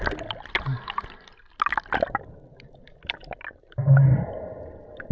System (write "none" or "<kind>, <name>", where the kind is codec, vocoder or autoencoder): none